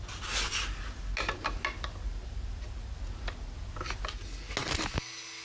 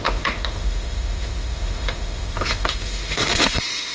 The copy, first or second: second